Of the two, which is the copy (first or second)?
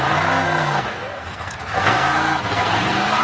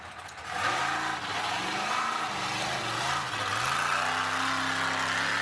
first